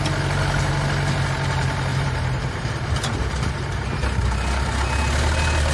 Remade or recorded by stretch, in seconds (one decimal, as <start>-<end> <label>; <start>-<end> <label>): 0.0-1.9 recorded; 1.9-2.8 remade; 2.8-5.7 recorded